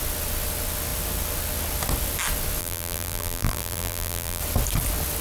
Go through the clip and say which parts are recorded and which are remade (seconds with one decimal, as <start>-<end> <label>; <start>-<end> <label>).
0.0-2.6 recorded; 2.6-4.4 remade; 4.4-5.2 recorded